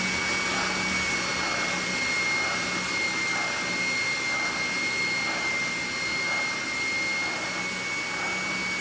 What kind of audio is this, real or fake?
real